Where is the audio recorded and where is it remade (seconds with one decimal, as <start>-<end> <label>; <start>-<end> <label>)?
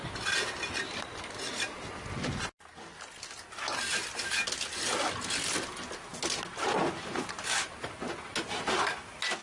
0.0-9.4 recorded